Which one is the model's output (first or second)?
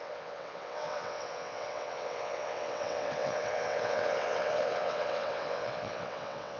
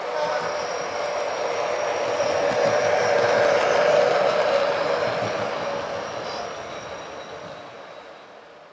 first